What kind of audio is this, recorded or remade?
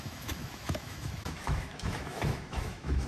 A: remade